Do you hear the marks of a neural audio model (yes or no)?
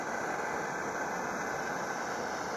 no